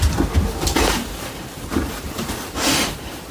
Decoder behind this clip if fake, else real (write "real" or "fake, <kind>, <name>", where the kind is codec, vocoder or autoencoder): real